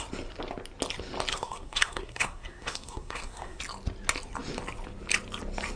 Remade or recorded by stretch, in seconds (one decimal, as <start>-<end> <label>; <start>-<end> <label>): 0.0-1.3 recorded; 1.3-3.6 remade; 3.6-5.8 recorded

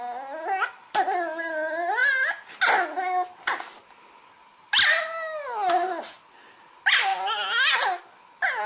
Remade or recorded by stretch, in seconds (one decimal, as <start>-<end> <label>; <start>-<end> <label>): 0.0-8.7 recorded

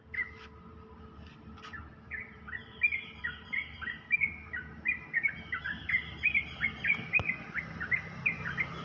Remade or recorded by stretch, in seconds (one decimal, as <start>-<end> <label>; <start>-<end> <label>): 0.0-8.8 remade